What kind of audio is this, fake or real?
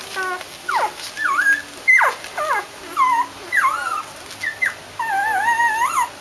real